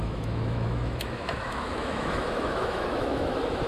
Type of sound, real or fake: fake